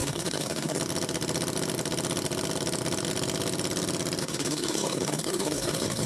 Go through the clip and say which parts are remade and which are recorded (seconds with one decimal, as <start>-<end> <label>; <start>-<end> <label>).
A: 0.0-0.8 remade; 0.8-4.2 recorded; 4.2-6.1 remade